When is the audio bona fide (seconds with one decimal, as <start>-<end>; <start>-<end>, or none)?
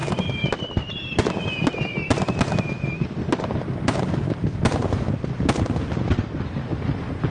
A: 0.0-7.3